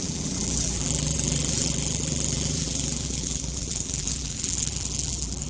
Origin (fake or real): fake